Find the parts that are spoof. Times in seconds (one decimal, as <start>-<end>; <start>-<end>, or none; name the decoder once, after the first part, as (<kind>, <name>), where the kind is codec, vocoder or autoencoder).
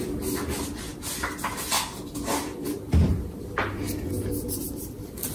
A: none